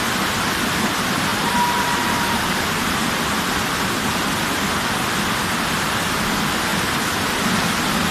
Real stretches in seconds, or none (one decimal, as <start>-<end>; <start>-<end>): 0.0-1.3; 2.6-8.1